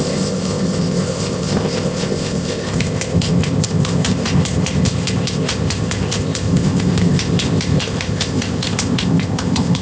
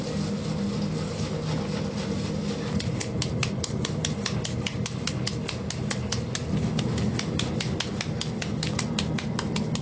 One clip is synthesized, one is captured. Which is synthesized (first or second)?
first